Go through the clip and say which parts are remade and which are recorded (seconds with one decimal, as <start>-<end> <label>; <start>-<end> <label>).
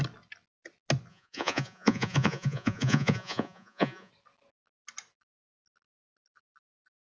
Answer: 0.0-1.1 recorded; 1.1-4.1 remade; 4.1-7.1 recorded